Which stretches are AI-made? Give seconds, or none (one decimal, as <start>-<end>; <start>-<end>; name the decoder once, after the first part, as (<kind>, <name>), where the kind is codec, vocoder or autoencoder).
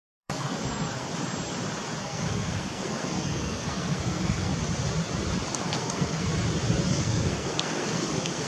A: 0.0-1.1 (codec, SNAC); 2.0-4.5; 5.6-6.3; 6.9-8.5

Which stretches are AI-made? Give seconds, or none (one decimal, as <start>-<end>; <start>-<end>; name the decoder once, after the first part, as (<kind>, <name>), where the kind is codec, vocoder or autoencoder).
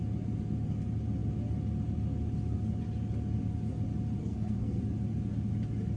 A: 4.2-4.8 (codec, SNAC)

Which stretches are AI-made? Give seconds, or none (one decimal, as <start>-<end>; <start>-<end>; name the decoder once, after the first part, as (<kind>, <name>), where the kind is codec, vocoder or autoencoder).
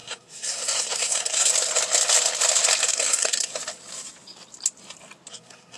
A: 0.0-1.5 (codec, SNAC); 2.9-3.5; 5.3-5.8